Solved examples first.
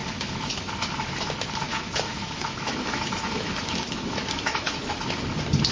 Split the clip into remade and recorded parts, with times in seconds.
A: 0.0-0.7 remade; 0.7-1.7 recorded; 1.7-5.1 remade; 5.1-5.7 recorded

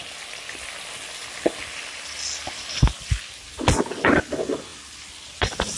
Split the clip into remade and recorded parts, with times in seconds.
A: 0.0-5.8 recorded

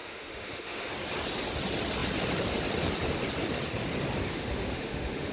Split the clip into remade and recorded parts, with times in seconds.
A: 0.0-0.9 remade; 0.9-4.3 recorded; 4.3-5.3 remade

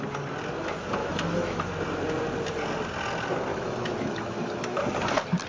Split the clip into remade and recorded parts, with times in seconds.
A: 0.0-1.0 recorded; 1.0-1.7 remade; 1.7-3.5 recorded; 3.5-4.8 remade; 4.8-5.5 recorded

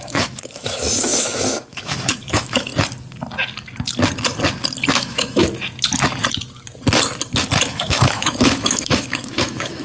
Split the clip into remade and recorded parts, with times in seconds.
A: 0.0-2.7 remade; 2.7-4.9 recorded; 4.9-5.4 remade; 5.4-7.7 recorded; 7.7-9.8 remade

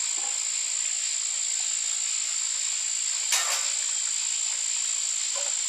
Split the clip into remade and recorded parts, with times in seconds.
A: 0.0-5.7 recorded

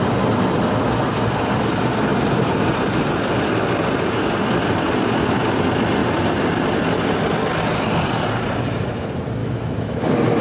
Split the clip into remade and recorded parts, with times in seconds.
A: 0.0-9.4 recorded; 9.4-10.0 remade; 10.0-10.4 recorded

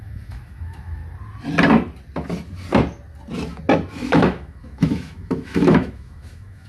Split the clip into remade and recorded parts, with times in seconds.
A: 0.0-1.0 remade; 1.0-3.9 recorded; 3.9-6.7 remade